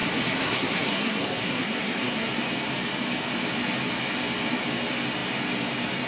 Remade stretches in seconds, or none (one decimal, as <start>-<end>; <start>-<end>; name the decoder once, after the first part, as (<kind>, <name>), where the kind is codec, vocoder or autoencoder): 0.0-2.3 (codec, SNAC)